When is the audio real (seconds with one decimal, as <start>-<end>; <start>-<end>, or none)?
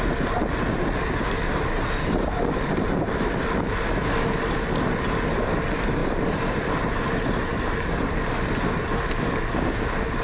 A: 0.0-6.0; 6.7-7.5; 8.1-10.2